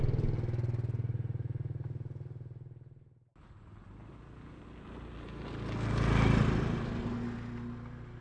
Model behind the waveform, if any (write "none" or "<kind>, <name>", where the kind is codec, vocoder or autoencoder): none